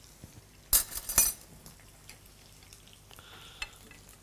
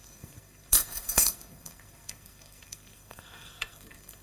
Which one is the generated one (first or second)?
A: second